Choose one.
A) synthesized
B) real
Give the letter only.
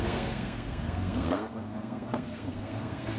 A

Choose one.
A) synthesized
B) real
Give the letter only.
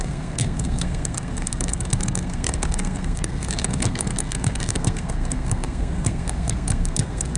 A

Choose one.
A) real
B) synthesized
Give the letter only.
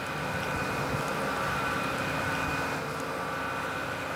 A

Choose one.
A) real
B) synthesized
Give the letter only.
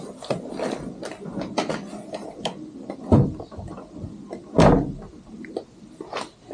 A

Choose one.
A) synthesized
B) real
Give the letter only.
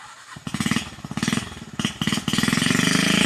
B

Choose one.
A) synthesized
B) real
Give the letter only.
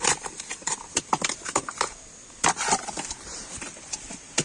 B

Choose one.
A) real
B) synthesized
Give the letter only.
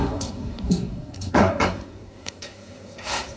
B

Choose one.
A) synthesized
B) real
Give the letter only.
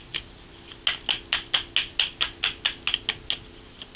B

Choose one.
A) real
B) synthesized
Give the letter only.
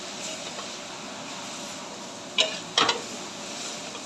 A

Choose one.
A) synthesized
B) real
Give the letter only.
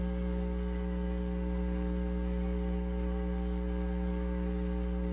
A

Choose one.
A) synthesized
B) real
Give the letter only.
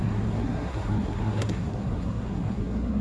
A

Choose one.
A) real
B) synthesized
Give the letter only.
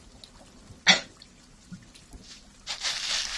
A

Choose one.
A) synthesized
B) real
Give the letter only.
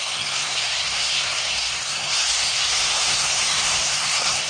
A